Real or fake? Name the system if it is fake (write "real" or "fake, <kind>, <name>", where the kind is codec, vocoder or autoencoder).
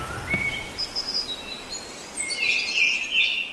real